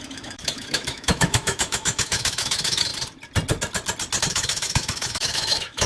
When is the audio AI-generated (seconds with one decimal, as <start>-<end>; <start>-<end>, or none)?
0.0-2.9; 4.2-5.9